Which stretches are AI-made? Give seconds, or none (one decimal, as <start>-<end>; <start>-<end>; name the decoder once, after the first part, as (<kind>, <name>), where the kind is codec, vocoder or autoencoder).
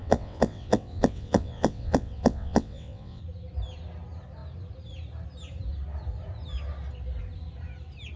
0.0-3.2 (vocoder, WaveNeXt)